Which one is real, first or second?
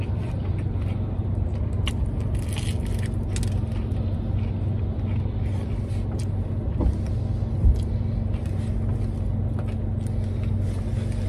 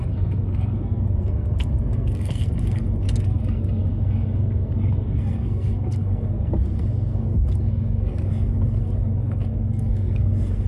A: first